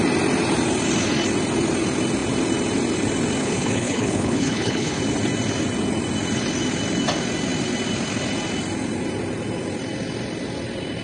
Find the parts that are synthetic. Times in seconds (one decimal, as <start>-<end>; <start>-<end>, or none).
3.4-5.0